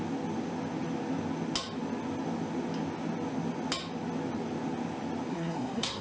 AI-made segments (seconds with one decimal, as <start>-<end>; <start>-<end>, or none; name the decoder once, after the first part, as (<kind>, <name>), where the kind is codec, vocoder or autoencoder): 5.3-6.0 (codec, SNAC)

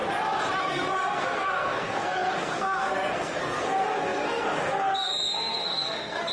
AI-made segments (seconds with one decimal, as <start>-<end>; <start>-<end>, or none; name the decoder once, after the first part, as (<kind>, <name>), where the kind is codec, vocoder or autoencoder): 0.6-6.3 (codec, SNAC)

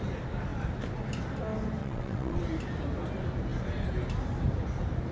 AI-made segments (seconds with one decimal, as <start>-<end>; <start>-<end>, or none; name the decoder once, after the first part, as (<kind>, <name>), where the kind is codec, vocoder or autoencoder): 1.8-2.4 (vocoder, WaveNeXt)

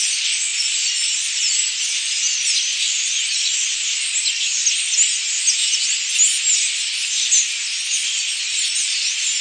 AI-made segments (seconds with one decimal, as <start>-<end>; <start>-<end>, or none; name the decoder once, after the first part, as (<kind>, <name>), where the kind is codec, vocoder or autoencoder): 0.5-1.4 (vocoder, BigVGAN v2); 2.7-4.0

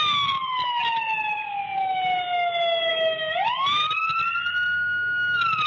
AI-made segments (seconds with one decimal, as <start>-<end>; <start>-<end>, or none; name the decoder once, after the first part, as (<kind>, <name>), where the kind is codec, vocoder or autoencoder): none

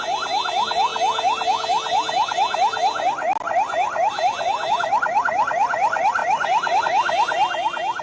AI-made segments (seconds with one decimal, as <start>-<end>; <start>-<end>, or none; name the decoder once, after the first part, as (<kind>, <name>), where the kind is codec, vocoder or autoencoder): 6.2-6.8 (vocoder, BigVGAN v2)

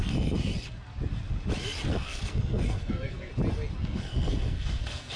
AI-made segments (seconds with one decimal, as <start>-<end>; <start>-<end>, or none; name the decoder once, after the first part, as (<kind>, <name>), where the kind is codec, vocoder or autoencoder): 0.0-0.5 (codec, SNAC); 1.9-3.3; 3.8-5.2